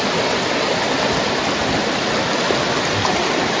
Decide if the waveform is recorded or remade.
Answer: recorded